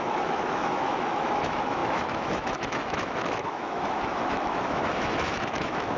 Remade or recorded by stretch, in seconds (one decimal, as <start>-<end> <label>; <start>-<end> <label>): 0.0-6.0 remade